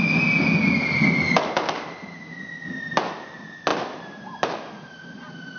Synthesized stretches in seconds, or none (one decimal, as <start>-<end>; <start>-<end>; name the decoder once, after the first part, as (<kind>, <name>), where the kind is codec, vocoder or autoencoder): none